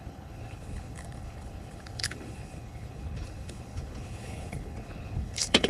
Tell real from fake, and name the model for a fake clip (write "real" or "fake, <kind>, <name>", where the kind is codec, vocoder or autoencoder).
fake, codec, HILCodec